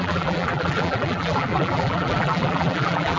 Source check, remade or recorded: remade